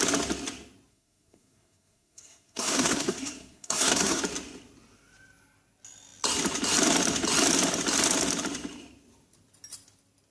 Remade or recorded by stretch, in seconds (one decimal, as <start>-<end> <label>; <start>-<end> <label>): 0.0-0.9 recorded; 0.9-4.2 remade; 4.2-10.3 recorded